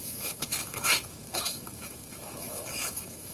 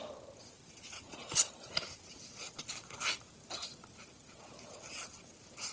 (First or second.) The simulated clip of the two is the first